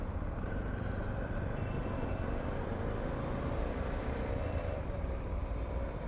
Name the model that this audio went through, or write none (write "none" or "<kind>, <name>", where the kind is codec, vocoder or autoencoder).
vocoder, BigVGAN v2